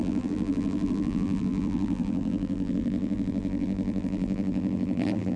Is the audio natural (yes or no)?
no